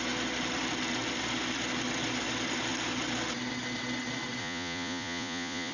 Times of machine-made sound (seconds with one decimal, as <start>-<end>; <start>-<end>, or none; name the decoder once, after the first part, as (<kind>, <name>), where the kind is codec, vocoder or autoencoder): 4.4-5.7 (vocoder, Vocos)